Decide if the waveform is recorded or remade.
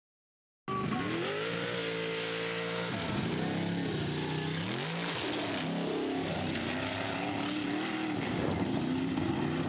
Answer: recorded